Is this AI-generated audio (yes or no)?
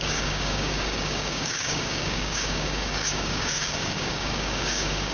yes